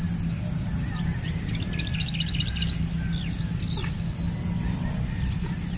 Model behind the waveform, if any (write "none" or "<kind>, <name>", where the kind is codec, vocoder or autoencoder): none